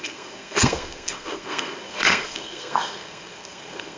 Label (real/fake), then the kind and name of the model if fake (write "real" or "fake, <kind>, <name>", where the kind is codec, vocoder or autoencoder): fake, codec, SNAC